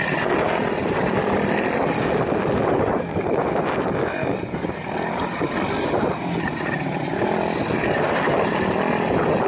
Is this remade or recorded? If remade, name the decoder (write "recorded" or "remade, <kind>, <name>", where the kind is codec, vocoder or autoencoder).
recorded